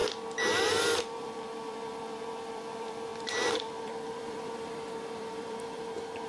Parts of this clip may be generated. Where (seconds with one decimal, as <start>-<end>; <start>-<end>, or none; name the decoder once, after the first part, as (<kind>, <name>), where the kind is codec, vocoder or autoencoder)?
0.7-6.3 (vocoder, BigVGAN v2)

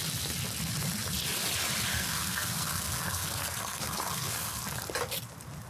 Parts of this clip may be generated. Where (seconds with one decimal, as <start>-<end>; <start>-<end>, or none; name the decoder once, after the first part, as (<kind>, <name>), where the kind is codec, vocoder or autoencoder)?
1.9-4.6 (codec, SNAC)